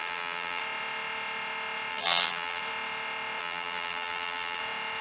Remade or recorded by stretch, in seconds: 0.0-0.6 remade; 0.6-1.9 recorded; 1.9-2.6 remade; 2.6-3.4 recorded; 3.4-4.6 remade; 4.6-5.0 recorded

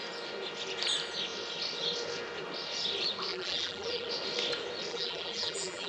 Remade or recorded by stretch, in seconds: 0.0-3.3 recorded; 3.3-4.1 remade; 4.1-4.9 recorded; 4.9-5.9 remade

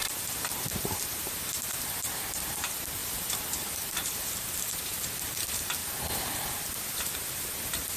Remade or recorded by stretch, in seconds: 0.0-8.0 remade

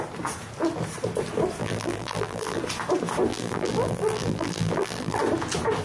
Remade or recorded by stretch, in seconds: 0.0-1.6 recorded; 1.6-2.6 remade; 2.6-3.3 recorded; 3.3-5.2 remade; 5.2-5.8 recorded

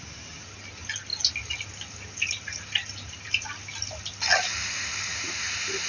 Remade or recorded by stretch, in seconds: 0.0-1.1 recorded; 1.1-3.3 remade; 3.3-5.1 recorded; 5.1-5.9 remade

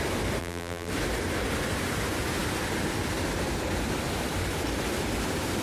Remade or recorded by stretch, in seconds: 0.0-0.4 recorded; 0.4-0.9 remade; 0.9-5.6 recorded

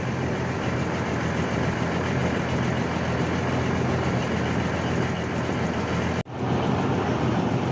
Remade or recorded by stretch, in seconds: 0.0-2.2 remade; 2.2-6.5 recorded; 6.5-7.7 remade

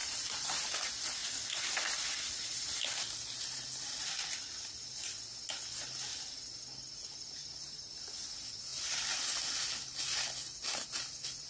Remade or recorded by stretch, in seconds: 0.0-0.7 remade; 0.7-11.5 recorded